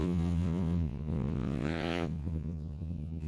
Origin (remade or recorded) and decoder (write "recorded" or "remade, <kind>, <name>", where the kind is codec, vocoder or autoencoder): remade, vocoder, Vocos